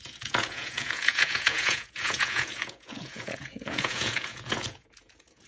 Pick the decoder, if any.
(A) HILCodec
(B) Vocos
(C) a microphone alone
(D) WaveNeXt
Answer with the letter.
B